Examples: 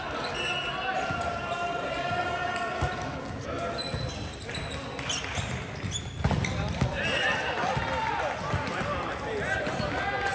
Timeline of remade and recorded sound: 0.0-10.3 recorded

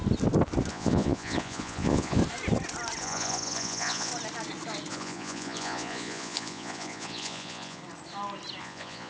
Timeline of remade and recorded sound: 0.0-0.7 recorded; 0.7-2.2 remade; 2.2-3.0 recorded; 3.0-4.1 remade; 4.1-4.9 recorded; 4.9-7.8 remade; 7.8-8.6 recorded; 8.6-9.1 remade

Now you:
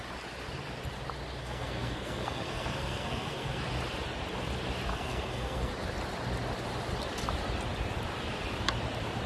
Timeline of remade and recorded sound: 0.0-1.4 recorded; 1.4-3.6 remade; 3.6-4.9 recorded; 4.9-5.7 remade; 5.7-9.3 recorded

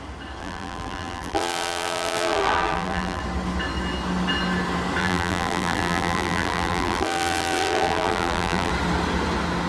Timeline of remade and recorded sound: 0.0-0.4 recorded; 0.4-3.2 remade; 3.2-5.0 recorded; 5.0-8.7 remade; 8.7-9.7 recorded